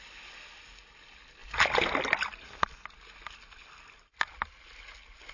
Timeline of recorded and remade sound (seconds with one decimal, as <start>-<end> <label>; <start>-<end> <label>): 0.0-5.3 recorded